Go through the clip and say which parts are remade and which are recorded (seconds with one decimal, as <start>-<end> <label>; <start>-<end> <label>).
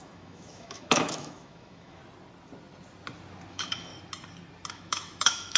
0.0-2.0 remade; 2.0-3.5 recorded; 3.5-3.9 remade; 3.9-4.7 recorded; 4.7-5.6 remade